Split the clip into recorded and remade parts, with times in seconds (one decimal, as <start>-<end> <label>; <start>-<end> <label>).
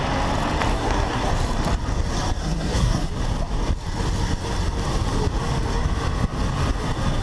0.0-0.7 recorded; 0.7-1.3 remade; 1.3-2.4 recorded; 2.4-3.1 remade; 3.1-7.2 recorded